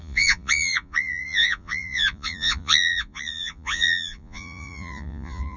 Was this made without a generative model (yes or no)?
no